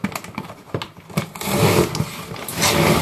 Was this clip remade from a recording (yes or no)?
no